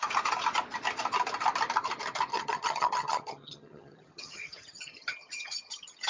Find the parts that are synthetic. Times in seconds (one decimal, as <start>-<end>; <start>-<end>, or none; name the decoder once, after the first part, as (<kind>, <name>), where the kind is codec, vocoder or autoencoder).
2.3-6.1 (vocoder, HiFi-GAN)

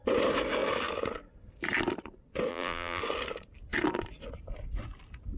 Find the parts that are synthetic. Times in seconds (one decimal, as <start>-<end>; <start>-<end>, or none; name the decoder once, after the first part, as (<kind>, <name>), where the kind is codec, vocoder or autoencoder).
2.5-3.0 (vocoder, BigVGAN v2)

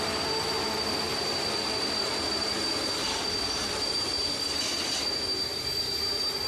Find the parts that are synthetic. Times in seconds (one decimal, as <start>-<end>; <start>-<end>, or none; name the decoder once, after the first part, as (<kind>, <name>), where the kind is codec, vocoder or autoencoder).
none

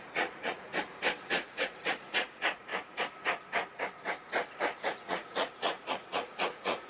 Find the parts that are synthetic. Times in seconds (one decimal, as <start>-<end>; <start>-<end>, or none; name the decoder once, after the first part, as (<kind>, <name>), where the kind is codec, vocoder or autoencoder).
0.0-0.7 (vocoder, Vocos); 1.3-2.7; 4.8-6.9